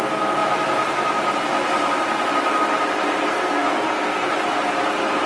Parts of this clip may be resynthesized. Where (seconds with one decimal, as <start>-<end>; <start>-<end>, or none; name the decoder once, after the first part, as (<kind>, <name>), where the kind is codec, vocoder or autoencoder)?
3.3-4.3 (codec, SNAC)